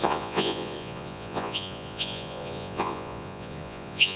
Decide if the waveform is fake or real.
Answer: fake